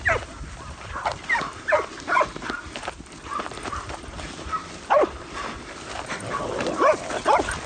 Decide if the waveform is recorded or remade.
recorded